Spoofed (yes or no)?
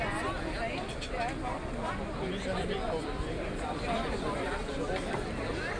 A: no